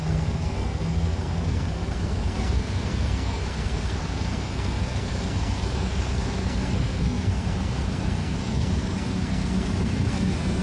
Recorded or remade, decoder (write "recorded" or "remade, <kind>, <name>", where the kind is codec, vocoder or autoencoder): remade, codec, SNAC